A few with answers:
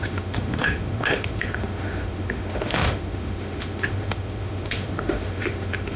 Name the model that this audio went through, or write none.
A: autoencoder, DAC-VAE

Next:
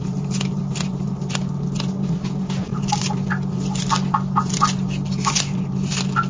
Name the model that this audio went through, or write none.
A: none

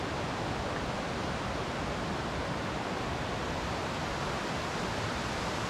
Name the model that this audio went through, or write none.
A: none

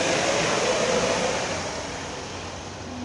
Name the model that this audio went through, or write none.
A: none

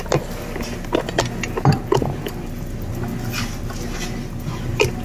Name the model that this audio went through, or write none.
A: none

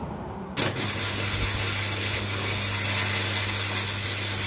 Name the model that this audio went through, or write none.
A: none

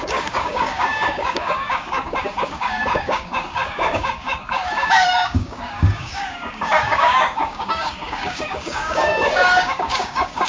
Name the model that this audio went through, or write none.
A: codec, DAC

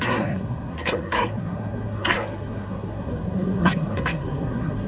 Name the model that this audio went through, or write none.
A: codec, SNAC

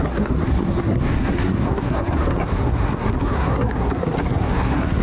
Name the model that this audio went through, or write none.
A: codec, SNAC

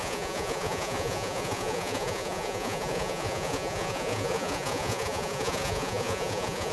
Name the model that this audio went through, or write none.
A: vocoder, Vocos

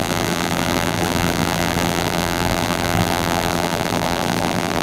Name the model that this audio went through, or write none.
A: vocoder, BigVGAN v2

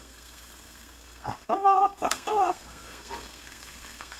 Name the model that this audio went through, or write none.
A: codec, SNAC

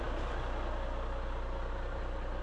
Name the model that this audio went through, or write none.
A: none